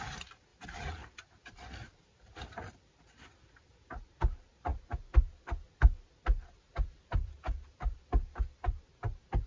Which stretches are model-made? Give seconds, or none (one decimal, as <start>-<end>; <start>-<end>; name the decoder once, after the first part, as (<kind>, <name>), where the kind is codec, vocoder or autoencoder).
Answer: 0.5-3.9 (vocoder, BigVGAN v2)